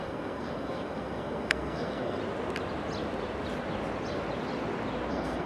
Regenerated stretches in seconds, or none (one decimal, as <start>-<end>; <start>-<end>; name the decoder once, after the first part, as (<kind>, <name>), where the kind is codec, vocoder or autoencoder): 0.0-2.2 (codec, SNAC); 5.1-5.5

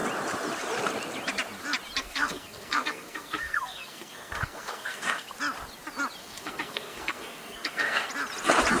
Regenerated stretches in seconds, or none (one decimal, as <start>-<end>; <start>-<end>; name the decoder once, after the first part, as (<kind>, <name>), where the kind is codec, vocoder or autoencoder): 2.0-5.3 (codec, SNAC); 6.2-8.1

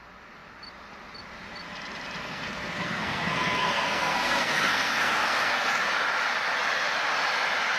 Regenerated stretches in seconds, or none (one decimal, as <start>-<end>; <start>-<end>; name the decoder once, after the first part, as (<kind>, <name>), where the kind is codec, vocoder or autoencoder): 2.2-5.9 (codec, SNAC)

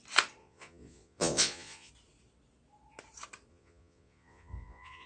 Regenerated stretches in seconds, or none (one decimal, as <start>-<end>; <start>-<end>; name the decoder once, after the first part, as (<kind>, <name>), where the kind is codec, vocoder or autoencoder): 0.4-1.9 (vocoder, Vocos); 3.5-5.1

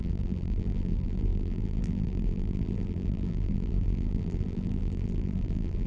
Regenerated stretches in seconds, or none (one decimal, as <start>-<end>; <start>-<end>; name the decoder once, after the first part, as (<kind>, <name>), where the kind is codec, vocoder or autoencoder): 0.0-5.9 (vocoder, BigVGAN v2)

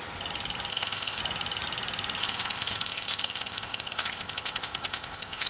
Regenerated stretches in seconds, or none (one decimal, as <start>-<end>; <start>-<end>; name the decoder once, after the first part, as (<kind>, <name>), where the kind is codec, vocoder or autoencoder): 0.7-1.2 (codec, ZipCodec); 2.2-5.5

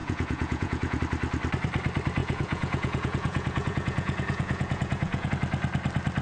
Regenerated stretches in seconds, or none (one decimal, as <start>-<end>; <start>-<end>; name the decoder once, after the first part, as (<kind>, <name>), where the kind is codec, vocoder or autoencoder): 0.0-1.0 (vocoder, Vocos); 2.2-5.3

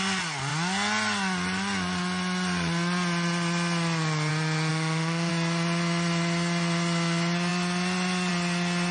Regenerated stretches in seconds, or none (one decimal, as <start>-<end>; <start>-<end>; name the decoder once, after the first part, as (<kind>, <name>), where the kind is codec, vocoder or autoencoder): 4.7-5.3 (autoencoder, DAC-VAE)